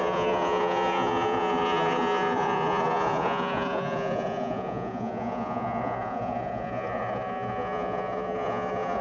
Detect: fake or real fake